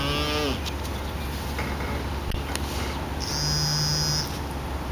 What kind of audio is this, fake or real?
real